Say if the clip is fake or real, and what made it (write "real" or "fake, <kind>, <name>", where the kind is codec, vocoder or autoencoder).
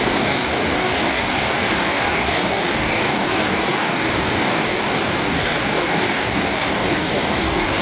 fake, codec, DAC